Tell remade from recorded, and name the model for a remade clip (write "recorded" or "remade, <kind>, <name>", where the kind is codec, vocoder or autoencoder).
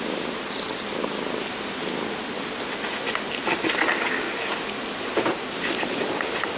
recorded